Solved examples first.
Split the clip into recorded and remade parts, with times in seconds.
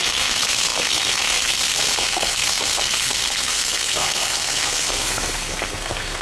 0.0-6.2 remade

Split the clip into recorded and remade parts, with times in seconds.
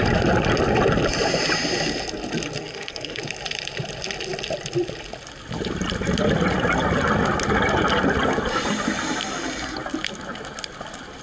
0.0-2.6 recorded; 2.6-3.2 remade; 3.2-11.2 recorded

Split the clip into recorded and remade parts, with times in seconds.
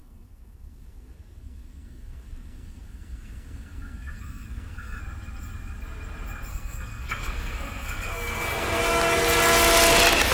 0.0-5.0 remade; 5.0-6.5 recorded; 6.5-8.8 remade; 8.8-10.3 recorded